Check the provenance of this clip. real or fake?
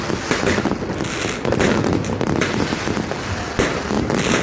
real